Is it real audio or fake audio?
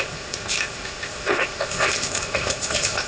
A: fake